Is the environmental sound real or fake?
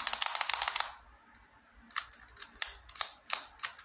real